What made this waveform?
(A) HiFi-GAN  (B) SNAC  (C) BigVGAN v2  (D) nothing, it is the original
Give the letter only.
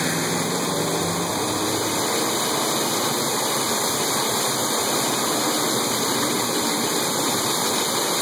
D